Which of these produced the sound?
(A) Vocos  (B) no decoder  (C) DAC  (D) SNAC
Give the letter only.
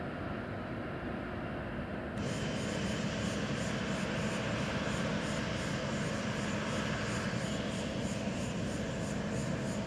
B